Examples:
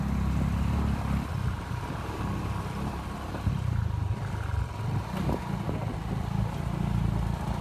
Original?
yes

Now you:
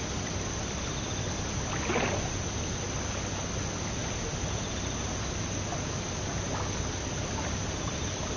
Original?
yes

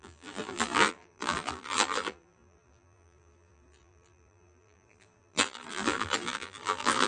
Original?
no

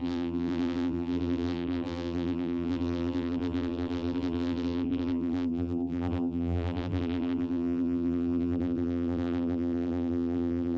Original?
no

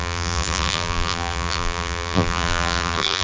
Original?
no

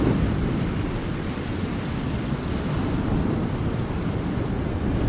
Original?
no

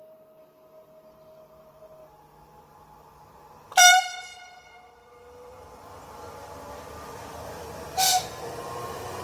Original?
no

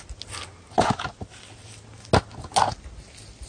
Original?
yes